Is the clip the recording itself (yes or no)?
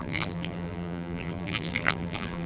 no